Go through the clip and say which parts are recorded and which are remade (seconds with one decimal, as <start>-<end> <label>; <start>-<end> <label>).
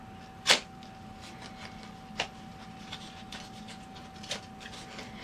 0.0-5.2 recorded